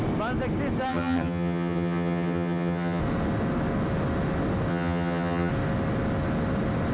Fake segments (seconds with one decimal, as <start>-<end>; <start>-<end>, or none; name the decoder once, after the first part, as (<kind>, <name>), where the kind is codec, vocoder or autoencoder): 0.9-3.0 (vocoder, HiFi-GAN); 4.7-5.5